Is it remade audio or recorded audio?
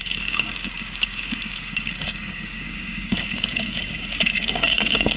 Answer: remade